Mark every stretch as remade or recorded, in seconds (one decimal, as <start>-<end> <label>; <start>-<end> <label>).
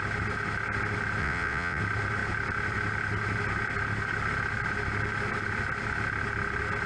0.0-1.2 recorded; 1.2-1.8 remade; 1.8-6.9 recorded